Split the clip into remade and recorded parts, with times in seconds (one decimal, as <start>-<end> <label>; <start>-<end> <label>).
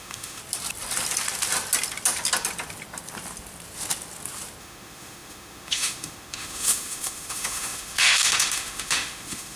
0.0-0.4 remade; 0.4-4.6 recorded; 4.6-9.6 remade